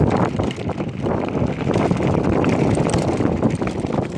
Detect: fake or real real